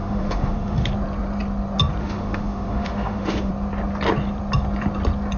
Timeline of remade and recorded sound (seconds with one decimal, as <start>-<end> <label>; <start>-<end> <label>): 0.0-0.9 remade; 0.9-2.0 recorded; 2.0-3.5 remade; 3.5-5.4 recorded